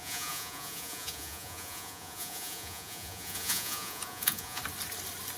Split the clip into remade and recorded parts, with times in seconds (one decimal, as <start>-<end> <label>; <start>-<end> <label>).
0.0-4.6 remade; 4.6-5.4 recorded